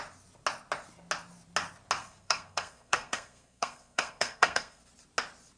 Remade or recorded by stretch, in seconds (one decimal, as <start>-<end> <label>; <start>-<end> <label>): 0.0-2.0 recorded; 2.0-4.8 remade; 4.8-5.6 recorded